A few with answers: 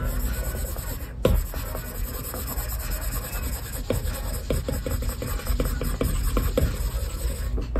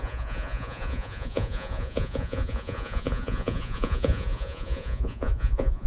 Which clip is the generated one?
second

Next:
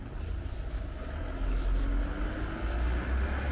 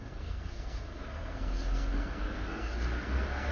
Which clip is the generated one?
second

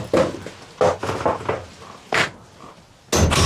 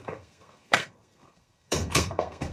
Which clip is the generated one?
second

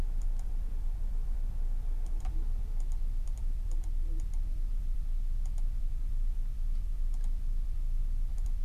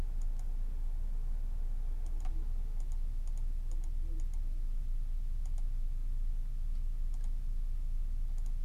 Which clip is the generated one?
first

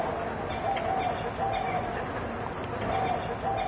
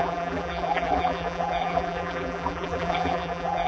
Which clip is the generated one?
second